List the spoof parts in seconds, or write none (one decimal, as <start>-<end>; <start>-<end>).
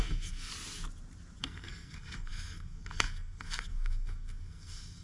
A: 0.0-0.5; 1.4-5.0